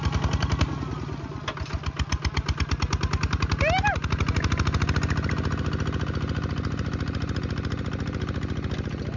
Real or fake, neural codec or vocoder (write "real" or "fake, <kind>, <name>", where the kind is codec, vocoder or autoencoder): real